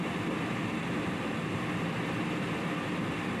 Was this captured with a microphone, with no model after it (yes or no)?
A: yes